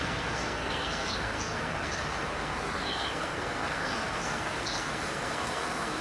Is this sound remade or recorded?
remade